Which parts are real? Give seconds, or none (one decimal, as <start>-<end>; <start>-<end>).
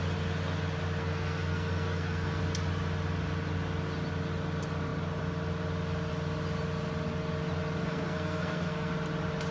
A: 0.0-1.0; 2.4-7.8; 8.9-9.5